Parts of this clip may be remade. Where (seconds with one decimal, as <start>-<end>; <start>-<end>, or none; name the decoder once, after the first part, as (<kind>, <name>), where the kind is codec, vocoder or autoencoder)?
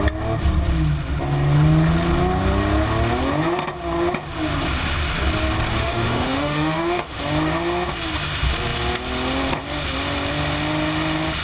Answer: 5.7-7.2 (autoencoder, DAC-VAE)